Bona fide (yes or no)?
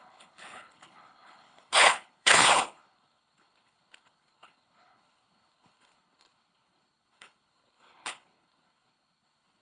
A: no